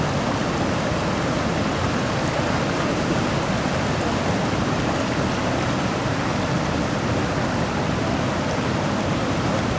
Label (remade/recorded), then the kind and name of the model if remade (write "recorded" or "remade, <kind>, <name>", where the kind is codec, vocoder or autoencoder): recorded